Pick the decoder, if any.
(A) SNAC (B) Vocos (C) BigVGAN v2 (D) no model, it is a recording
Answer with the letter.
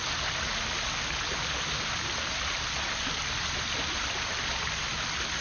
D